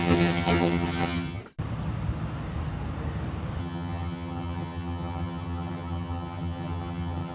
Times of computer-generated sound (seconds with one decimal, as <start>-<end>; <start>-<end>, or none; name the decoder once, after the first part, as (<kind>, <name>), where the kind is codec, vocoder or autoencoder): 0.0-1.4 (vocoder, HiFi-GAN); 3.6-7.3

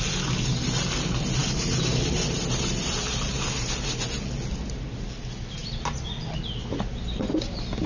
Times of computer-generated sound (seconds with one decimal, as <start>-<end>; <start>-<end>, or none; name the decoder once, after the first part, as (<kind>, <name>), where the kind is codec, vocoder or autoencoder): none

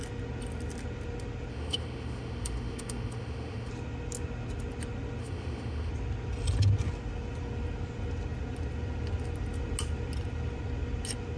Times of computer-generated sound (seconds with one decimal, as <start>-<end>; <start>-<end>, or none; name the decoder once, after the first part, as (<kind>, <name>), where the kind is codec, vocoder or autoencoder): 1.5-3.7 (autoencoder, DAC-VAE); 5.2-5.9